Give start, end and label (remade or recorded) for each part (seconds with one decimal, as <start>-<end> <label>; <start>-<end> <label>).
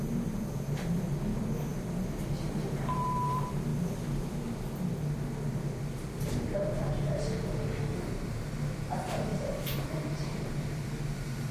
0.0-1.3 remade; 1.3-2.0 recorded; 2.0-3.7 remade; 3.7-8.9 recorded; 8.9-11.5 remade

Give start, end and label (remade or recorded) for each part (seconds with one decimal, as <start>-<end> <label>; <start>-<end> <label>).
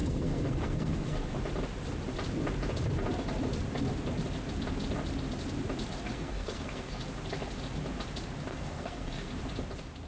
0.0-1.3 remade; 1.3-6.1 recorded; 6.1-7.0 remade; 7.0-8.5 recorded; 8.5-9.3 remade; 9.3-10.1 recorded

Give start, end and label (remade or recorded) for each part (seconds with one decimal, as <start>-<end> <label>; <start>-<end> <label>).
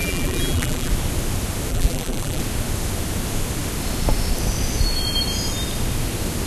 0.0-0.9 remade; 0.9-1.7 recorded; 1.7-2.4 remade; 2.4-6.5 recorded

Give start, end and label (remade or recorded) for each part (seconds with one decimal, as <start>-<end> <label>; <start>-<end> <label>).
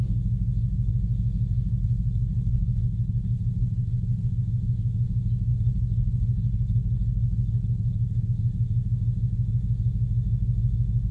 0.0-1.8 recorded; 1.8-4.3 remade; 4.3-5.5 recorded; 5.5-8.2 remade; 8.2-11.1 recorded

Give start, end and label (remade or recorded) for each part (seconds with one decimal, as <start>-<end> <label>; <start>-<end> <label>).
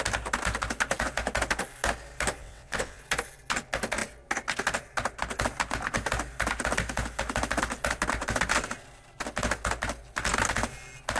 0.0-2.4 recorded; 2.4-3.0 remade; 3.0-11.2 recorded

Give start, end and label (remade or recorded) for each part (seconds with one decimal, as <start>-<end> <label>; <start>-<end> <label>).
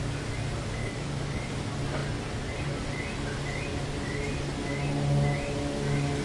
0.0-0.8 recorded; 0.8-1.4 remade; 1.4-6.2 recorded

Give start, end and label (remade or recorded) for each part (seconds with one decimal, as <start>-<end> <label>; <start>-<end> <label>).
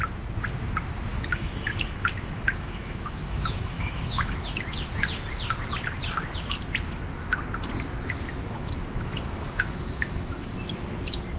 0.0-1.1 recorded; 1.1-4.6 remade; 4.6-8.4 recorded; 8.4-10.5 remade; 10.5-11.4 recorded